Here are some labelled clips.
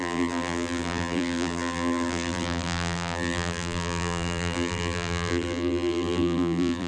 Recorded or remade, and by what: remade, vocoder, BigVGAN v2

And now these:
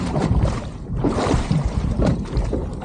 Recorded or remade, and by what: remade, vocoder, BigVGAN v2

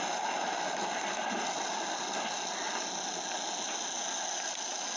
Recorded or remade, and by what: recorded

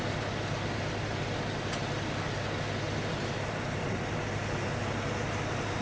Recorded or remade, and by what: recorded